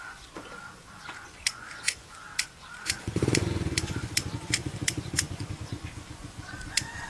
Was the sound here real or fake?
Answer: fake